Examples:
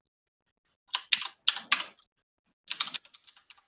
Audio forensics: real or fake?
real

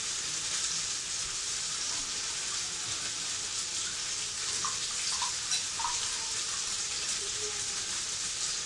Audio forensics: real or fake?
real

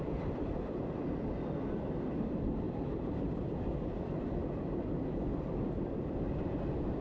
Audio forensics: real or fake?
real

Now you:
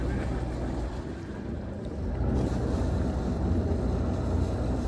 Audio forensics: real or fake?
real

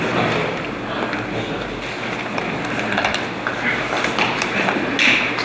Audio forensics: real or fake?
real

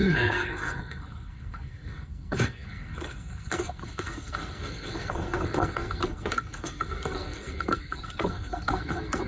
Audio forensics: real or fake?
fake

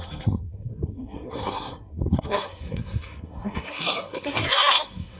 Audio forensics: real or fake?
fake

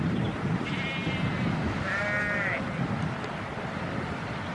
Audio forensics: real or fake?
real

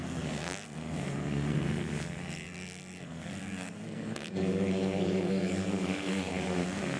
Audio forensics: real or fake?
fake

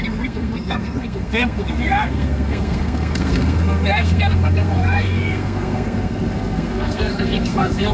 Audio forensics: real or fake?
fake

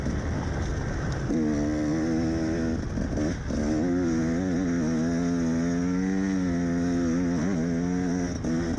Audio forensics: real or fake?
real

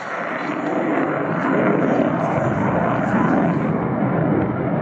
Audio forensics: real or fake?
real